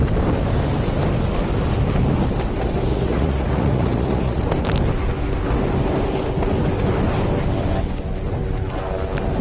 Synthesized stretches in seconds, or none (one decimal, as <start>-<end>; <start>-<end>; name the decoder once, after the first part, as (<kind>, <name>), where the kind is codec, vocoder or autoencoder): 2.9-4.4 (vocoder, Vocos)